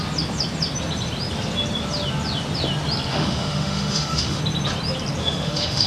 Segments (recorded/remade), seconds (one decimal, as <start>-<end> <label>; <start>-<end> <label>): 0.0-3.1 recorded; 3.1-4.4 remade; 4.4-5.2 recorded; 5.2-5.9 remade

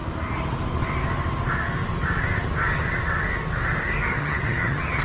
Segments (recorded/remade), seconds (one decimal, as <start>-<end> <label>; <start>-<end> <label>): 0.0-4.1 recorded; 4.1-5.0 remade

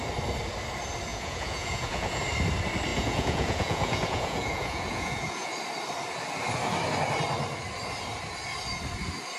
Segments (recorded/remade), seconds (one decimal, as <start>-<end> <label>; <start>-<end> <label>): 0.0-1.1 recorded; 1.1-2.2 remade; 2.2-2.9 recorded; 2.9-5.5 remade; 5.5-9.4 recorded

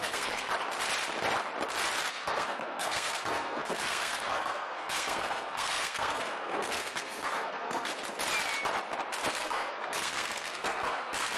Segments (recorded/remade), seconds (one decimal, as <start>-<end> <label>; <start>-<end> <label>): 0.0-0.5 remade; 0.5-2.1 recorded; 2.1-7.9 remade; 7.9-9.3 recorded; 9.3-11.4 remade